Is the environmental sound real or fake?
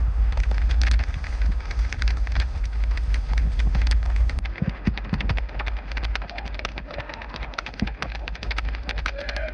fake